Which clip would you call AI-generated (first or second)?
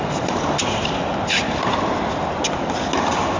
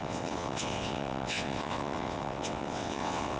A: second